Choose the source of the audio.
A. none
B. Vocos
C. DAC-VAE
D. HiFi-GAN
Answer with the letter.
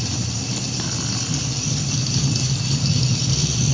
A